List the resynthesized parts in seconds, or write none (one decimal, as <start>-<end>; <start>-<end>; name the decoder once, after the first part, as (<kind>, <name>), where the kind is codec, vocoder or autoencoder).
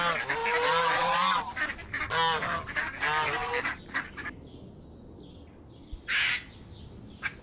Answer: none